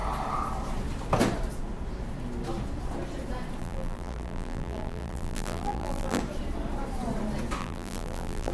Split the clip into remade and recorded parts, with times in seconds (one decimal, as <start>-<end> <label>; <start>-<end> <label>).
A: 0.0-3.6 recorded; 3.6-6.2 remade; 6.2-7.6 recorded; 7.6-8.5 remade